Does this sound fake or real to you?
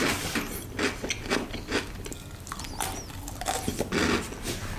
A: real